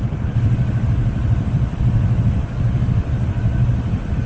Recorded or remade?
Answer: recorded